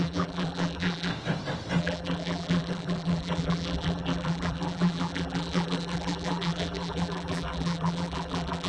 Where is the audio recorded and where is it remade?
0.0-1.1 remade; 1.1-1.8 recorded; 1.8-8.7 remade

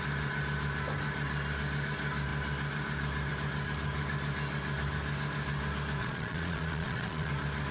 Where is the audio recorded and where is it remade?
0.0-6.0 recorded; 6.0-7.3 remade; 7.3-7.7 recorded

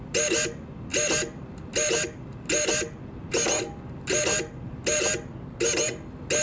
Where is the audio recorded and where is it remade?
0.0-6.4 recorded

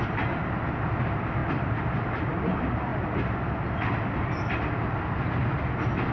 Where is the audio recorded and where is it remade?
0.0-1.4 recorded; 1.4-1.9 remade; 1.9-6.1 recorded

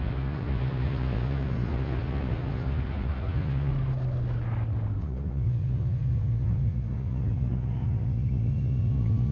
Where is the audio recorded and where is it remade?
0.0-3.7 remade; 3.7-5.0 recorded; 5.0-9.3 remade

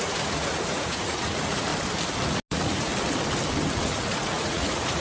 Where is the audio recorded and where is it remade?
0.0-1.7 remade; 1.7-2.5 recorded; 2.5-2.9 remade; 2.9-3.8 recorded; 3.8-5.0 remade